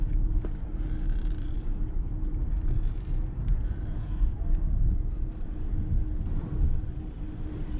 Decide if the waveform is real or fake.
fake